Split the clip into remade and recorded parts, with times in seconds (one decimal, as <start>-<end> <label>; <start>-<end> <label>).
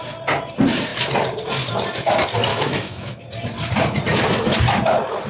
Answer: 0.0-2.5 recorded; 2.5-3.2 remade; 3.2-5.3 recorded